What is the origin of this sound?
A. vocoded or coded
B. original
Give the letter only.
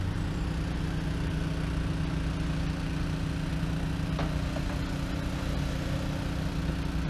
B